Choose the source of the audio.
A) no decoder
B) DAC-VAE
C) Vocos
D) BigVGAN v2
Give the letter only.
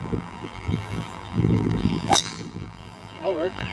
D